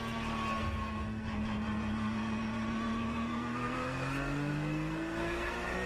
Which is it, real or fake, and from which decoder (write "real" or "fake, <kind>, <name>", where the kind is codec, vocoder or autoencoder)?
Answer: fake, codec, SNAC